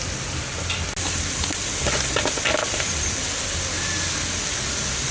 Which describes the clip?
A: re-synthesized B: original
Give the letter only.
B